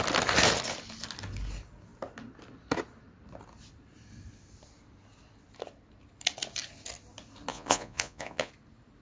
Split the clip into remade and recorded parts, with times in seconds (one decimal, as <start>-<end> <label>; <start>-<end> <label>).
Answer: 0.0-7.5 recorded; 7.5-8.5 remade; 8.5-9.0 recorded